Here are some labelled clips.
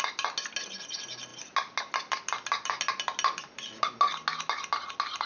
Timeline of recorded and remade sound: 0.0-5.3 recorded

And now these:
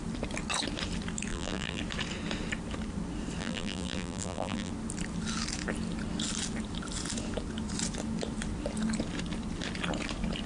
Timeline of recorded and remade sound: 0.0-1.3 recorded; 1.3-1.8 remade; 1.8-3.4 recorded; 3.4-4.7 remade; 4.7-10.5 recorded